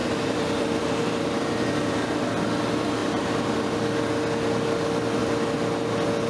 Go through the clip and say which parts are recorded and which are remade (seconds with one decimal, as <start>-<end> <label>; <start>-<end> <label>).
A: 0.0-1.4 remade; 1.4-3.0 recorded; 3.0-3.8 remade; 3.8-6.3 recorded